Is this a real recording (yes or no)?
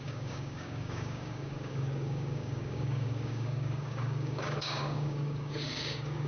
no